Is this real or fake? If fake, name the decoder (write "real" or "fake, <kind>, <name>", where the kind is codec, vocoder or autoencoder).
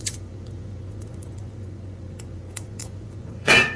fake, vocoder, Vocos